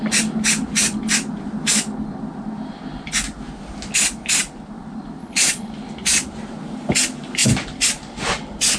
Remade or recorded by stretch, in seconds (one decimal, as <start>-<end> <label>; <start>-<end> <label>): 0.0-5.2 recorded; 5.2-5.7 remade; 5.7-8.8 recorded